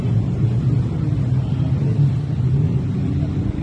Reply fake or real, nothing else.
real